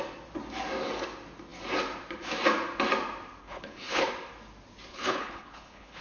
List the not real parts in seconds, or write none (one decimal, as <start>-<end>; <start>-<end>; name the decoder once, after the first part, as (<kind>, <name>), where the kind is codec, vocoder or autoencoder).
3.4-4.1 (codec, HILCodec); 4.9-6.0